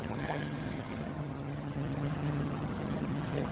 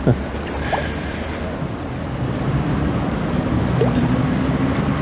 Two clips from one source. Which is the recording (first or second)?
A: second